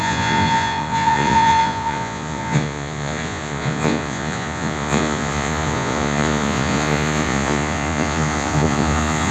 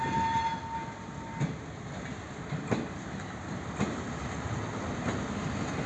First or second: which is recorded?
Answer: second